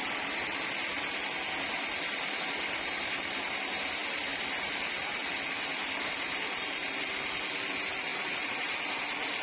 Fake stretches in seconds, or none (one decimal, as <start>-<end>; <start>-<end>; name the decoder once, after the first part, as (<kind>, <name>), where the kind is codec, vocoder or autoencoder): 8.1-8.8 (vocoder, Vocos)

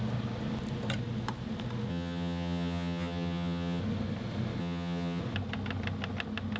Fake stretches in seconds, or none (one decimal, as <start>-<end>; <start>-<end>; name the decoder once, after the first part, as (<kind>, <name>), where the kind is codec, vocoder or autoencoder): 1.9-3.8 (vocoder, HiFi-GAN); 4.6-5.2

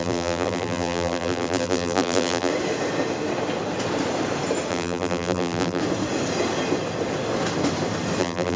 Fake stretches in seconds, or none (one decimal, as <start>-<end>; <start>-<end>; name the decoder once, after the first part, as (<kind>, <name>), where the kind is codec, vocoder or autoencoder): 0.0-2.5 (vocoder, BigVGAN v2); 4.7-5.8; 8.2-8.6

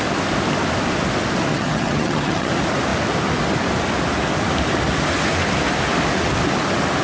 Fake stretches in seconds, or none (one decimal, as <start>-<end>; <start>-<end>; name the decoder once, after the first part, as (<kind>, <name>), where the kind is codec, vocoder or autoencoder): 1.5-2.5 (vocoder, HiFi-GAN)

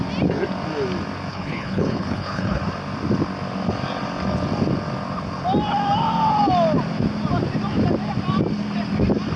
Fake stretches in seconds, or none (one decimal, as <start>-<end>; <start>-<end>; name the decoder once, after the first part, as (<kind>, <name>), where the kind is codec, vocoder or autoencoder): 1.3-2.6 (codec, HILCodec)

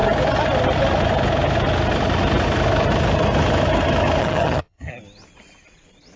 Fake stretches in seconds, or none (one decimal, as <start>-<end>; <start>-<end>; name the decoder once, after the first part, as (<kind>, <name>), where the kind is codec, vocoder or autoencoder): 4.2-4.9 (vocoder, HiFi-GAN)